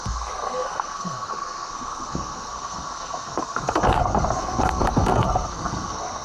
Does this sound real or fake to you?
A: fake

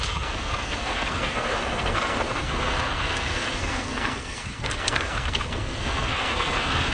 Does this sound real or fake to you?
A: fake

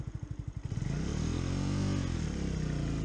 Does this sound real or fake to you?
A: real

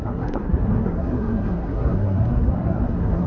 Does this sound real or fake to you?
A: fake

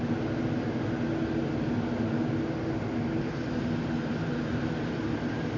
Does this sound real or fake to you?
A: real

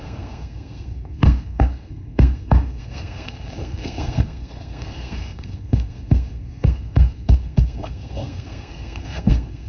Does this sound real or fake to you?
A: fake